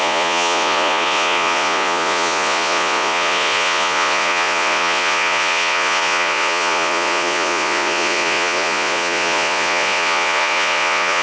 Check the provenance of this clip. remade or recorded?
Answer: remade